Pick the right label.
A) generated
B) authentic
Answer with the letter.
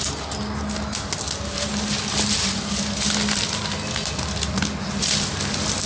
B